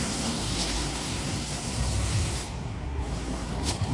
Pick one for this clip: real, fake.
fake